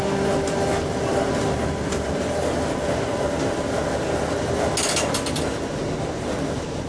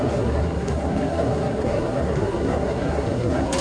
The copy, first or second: second